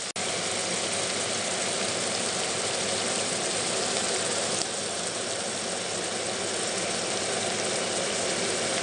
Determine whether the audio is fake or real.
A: real